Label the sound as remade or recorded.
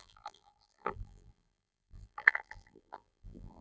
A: remade